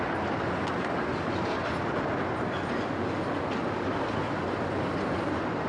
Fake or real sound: real